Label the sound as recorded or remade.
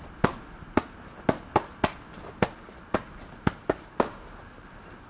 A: recorded